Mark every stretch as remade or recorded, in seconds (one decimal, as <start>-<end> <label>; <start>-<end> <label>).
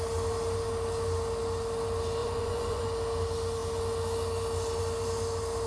0.0-2.2 recorded; 2.2-2.8 remade; 2.8-5.7 recorded